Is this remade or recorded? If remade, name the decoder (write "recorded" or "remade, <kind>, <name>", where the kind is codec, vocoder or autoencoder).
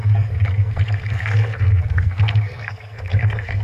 remade, codec, SNAC